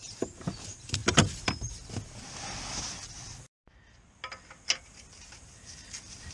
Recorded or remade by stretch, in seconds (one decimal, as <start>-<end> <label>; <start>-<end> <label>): 0.0-1.0 remade; 1.0-4.8 recorded; 4.8-6.3 remade